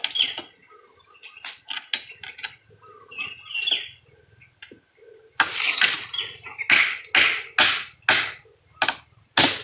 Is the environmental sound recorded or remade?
recorded